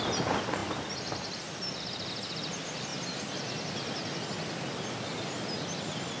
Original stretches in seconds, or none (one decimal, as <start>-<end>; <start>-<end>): 0.0-6.2